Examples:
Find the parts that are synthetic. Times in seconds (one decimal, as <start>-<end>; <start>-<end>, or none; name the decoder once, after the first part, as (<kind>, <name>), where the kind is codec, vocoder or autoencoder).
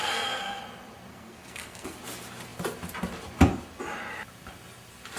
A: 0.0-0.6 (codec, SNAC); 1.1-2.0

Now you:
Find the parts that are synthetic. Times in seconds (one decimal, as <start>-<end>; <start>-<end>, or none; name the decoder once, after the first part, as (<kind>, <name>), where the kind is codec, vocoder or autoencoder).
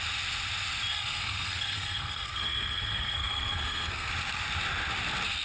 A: 0.9-4.1 (codec, SNAC)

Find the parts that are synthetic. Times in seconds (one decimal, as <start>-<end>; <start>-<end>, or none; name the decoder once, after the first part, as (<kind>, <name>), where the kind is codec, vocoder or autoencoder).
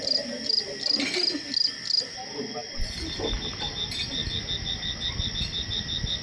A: none